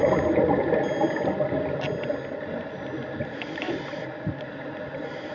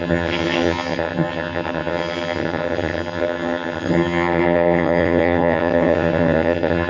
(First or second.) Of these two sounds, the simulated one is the second